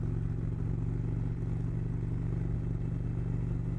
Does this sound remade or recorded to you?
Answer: recorded